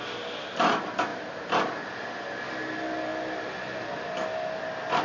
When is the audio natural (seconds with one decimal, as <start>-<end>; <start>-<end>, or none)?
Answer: 0.0-5.0